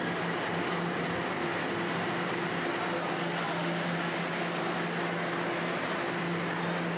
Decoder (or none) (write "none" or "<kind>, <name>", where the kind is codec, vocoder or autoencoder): none